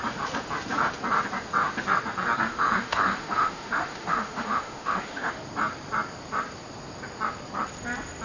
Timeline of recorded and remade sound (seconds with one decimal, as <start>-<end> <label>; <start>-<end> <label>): 0.0-2.5 recorded; 2.5-5.3 remade; 5.3-8.2 recorded